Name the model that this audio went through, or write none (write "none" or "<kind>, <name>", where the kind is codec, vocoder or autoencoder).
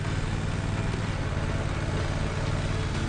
none